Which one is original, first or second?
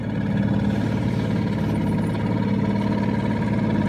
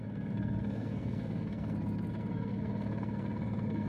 first